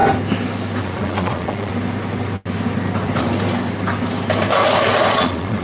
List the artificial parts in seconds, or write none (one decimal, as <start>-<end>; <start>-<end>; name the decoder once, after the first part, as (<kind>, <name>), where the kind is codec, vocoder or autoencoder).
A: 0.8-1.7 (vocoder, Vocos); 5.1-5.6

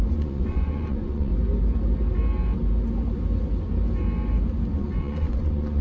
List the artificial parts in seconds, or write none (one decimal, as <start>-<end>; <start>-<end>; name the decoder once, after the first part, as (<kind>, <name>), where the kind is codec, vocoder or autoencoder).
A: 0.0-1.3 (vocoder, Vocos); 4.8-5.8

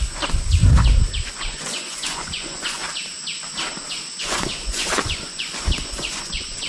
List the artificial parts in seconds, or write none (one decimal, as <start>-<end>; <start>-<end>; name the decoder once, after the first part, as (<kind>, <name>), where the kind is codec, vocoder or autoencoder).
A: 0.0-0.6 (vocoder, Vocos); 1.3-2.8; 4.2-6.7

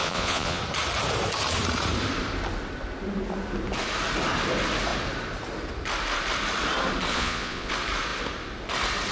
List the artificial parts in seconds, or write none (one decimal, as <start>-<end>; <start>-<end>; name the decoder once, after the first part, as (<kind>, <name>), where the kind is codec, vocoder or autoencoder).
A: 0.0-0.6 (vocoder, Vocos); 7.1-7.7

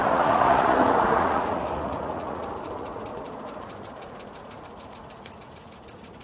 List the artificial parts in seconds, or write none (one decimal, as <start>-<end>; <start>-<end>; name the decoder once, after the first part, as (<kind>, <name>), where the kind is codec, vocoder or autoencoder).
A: 0.0-6.2 (vocoder, Vocos)